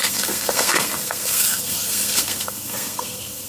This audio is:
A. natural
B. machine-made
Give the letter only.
B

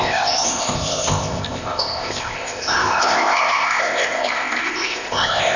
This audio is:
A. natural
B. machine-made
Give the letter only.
B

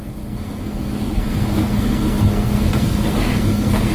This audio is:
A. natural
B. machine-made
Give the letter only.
B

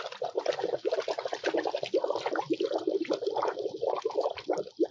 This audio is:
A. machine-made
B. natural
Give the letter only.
B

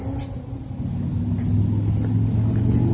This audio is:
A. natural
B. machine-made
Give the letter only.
A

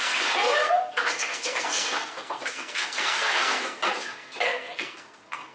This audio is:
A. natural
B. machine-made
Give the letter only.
B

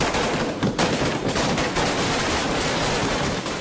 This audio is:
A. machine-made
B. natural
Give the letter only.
A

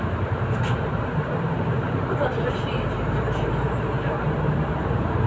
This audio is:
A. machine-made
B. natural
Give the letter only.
A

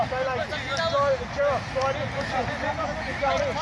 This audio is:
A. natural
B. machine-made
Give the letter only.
A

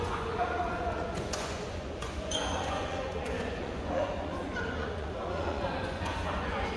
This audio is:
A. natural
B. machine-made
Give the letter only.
B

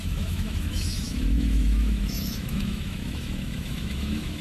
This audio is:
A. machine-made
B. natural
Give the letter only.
A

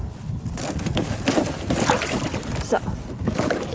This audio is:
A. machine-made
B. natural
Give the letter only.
B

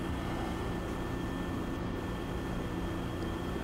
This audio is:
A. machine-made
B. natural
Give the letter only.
B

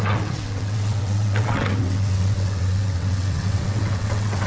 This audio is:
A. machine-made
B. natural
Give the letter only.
A